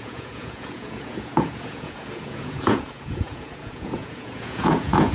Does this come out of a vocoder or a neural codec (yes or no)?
yes